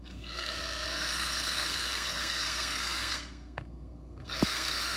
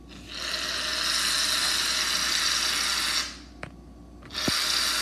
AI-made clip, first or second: first